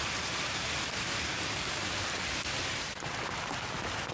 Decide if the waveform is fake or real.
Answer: real